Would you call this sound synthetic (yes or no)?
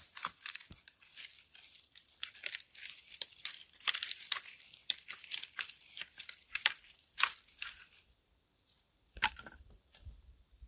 yes